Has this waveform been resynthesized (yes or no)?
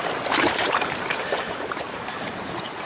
yes